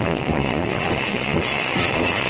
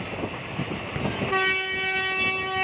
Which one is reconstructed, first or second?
first